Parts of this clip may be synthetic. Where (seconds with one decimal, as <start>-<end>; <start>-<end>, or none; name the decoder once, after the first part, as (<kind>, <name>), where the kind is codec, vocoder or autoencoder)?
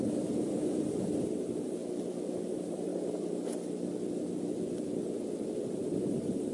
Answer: 0.0-1.8 (vocoder, BigVGAN v2); 2.5-2.9; 5.7-6.5